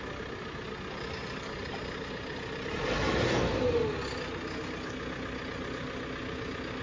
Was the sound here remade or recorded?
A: recorded